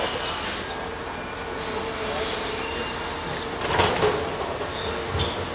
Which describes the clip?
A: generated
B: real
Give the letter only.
B